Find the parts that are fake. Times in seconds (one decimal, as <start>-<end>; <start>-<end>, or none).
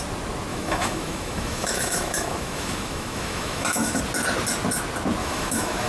0.5-4.0; 5.2-5.9